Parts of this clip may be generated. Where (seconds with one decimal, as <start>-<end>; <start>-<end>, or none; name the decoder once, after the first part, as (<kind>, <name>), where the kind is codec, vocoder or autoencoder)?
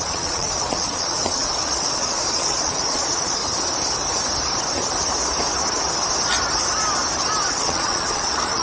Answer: 0.0-3.4 (vocoder, Vocos); 7.5-8.6